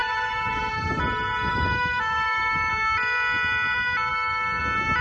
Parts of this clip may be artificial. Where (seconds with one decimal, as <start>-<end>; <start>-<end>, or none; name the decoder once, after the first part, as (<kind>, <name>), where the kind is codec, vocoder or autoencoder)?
0.0-0.5 (autoencoder, DAC-VAE); 1.5-2.7; 4.1-4.6